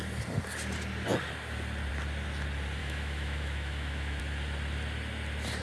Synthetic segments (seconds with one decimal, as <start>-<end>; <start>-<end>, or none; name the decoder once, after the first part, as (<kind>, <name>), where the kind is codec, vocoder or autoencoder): 2.8-4.2 (autoencoder, DAC-VAE)